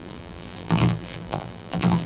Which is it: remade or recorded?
remade